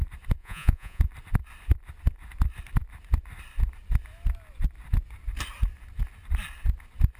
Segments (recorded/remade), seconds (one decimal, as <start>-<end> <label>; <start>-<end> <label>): 0.0-0.4 recorded; 0.4-1.0 remade; 1.0-7.2 recorded